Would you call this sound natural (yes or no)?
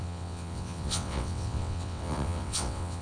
no